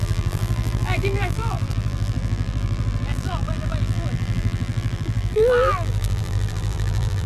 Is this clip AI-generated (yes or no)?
yes